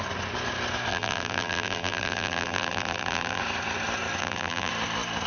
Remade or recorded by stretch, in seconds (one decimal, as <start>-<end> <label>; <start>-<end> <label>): 0.0-0.9 recorded; 0.9-3.4 remade; 3.4-4.2 recorded; 4.2-4.7 remade; 4.7-5.3 recorded